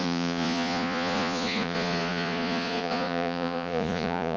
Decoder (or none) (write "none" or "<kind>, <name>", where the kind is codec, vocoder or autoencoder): vocoder, Vocos